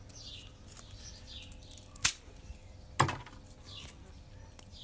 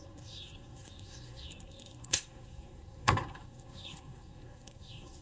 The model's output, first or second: second